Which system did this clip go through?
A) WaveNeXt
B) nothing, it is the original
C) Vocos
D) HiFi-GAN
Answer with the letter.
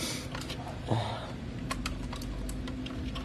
B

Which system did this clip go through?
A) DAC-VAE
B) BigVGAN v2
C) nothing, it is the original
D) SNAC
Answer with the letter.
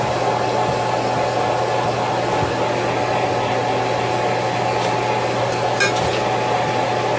C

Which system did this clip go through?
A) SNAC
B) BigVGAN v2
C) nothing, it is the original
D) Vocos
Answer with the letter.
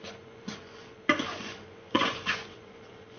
D